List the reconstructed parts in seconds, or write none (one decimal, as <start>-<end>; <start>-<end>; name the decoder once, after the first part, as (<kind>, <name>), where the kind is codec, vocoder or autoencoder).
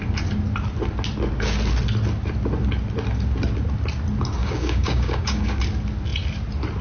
4.4-5.6 (codec, DAC)